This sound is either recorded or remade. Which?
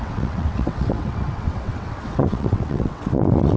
remade